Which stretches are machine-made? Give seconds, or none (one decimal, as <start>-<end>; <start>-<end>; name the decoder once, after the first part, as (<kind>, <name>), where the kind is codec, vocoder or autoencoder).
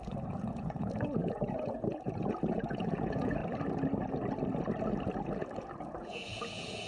0.0-3.4 (vocoder, Vocos); 5.4-6.9